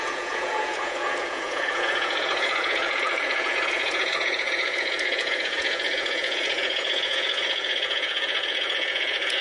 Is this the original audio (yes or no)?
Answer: no